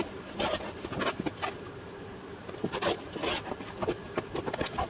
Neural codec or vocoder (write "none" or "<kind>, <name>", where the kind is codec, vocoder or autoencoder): none